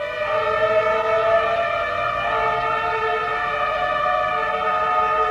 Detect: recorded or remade recorded